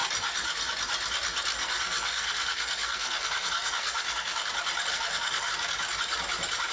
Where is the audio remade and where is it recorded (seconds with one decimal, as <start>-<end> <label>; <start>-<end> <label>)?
0.0-1.5 recorded; 1.5-4.5 remade; 4.5-4.9 recorded; 4.9-5.5 remade; 5.5-6.7 recorded